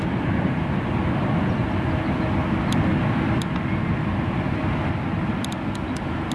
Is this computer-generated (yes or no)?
no